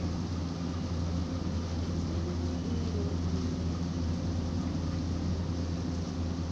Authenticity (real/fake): real